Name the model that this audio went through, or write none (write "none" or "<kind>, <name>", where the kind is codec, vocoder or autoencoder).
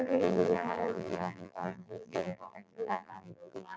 vocoder, BigVGAN v2